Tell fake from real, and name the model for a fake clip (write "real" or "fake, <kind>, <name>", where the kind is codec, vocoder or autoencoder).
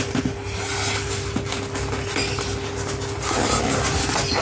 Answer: real